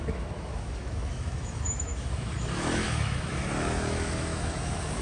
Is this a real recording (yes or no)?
no